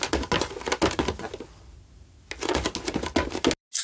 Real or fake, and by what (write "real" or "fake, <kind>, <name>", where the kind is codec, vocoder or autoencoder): real